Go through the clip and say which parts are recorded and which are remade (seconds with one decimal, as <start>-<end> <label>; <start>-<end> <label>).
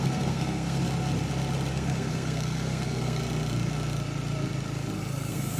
0.0-0.8 remade; 0.8-1.7 recorded; 1.7-3.2 remade; 3.2-5.1 recorded; 5.1-5.6 remade